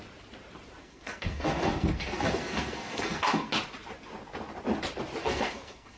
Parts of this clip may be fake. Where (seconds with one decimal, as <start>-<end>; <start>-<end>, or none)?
0.8-3.5; 5.2-6.0